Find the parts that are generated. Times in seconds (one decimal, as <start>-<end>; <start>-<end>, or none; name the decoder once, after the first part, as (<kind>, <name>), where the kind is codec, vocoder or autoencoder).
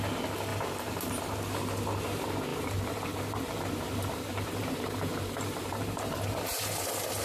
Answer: 0.5-1.2 (vocoder, BigVGAN v2); 2.5-6.8